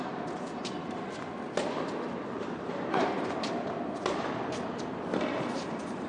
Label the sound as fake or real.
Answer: real